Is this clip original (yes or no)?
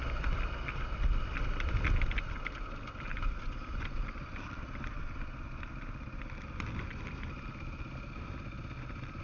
yes